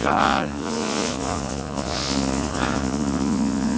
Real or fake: fake